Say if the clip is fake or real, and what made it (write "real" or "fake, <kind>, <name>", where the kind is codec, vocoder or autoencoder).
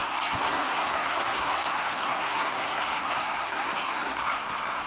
fake, codec, SNAC